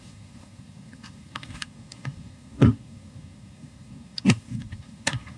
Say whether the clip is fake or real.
fake